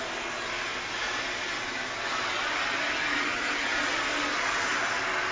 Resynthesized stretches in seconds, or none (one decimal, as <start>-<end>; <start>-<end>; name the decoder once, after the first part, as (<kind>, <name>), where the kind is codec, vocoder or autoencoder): none